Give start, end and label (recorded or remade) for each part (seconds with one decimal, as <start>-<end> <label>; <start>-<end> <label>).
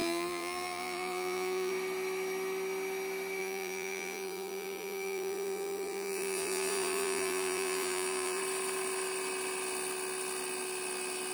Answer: 0.0-1.7 remade; 1.7-3.4 recorded; 3.4-8.4 remade; 8.4-11.3 recorded